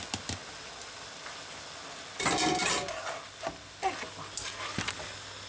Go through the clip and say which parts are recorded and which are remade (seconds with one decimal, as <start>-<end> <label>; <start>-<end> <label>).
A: 0.0-5.5 recorded